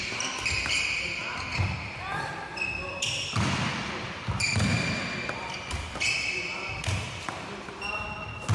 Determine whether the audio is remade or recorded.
recorded